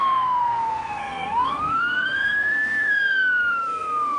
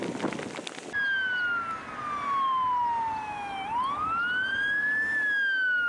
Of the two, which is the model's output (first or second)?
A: first